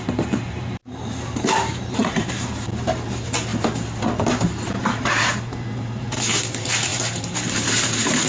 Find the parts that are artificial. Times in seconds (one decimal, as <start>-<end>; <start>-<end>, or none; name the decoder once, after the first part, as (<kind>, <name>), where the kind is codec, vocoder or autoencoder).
0.0-3.5 (vocoder, BigVGAN v2); 4.7-8.3